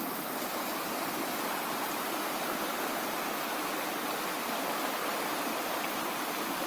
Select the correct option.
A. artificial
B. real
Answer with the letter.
B